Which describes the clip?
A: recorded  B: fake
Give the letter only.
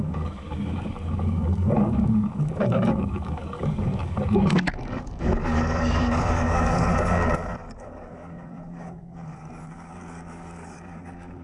B